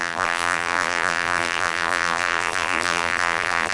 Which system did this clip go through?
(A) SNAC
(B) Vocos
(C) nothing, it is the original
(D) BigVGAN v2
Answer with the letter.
D